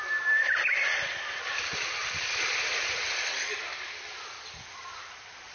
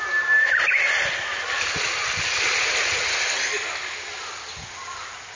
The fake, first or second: first